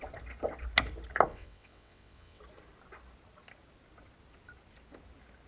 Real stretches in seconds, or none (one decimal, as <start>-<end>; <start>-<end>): 0.0-1.3; 2.4-5.5